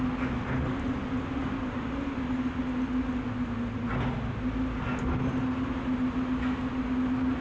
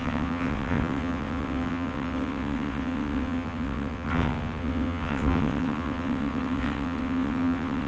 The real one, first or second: first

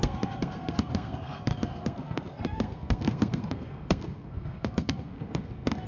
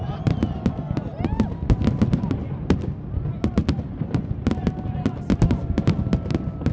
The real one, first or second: second